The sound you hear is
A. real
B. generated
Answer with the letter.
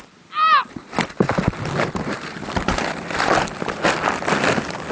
A